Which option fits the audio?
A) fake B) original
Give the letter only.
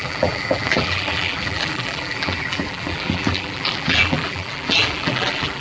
A